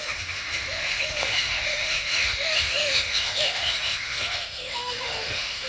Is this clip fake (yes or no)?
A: yes